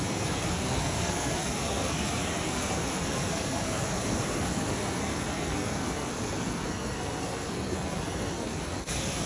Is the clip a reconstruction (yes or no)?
yes